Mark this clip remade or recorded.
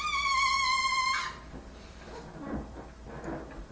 recorded